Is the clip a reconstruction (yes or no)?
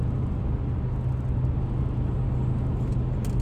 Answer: no